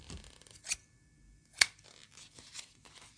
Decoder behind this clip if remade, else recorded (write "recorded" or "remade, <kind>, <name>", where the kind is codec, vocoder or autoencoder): recorded